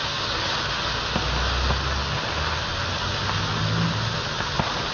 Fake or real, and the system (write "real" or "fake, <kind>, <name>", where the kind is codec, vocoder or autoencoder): real